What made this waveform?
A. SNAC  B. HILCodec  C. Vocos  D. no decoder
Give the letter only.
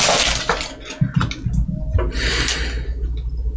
D